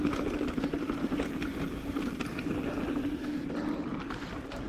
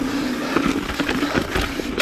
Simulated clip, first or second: first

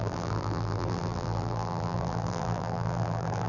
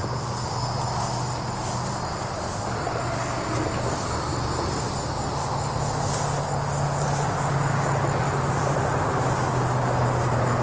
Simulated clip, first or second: first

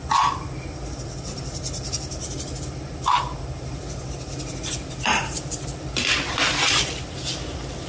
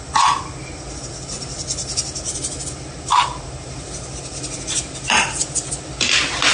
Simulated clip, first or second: first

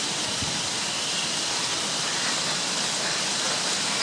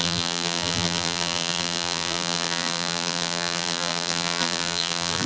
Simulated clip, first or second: second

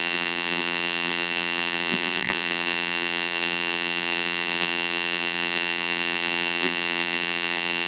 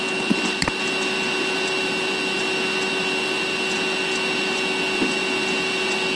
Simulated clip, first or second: first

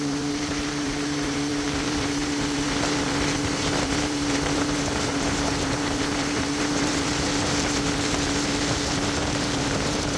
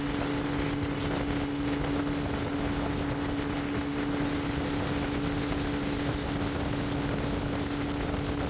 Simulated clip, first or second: first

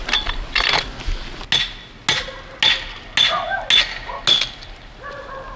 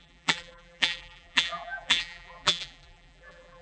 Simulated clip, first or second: second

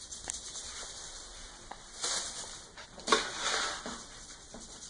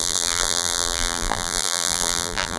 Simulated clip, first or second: second